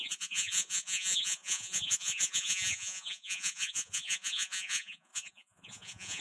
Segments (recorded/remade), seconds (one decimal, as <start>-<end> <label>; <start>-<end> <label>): 0.0-6.2 remade